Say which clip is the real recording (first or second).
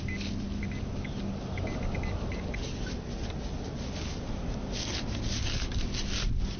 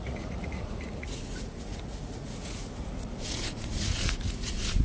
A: first